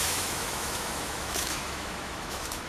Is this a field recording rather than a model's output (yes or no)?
no